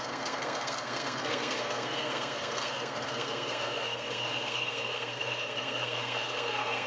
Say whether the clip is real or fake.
fake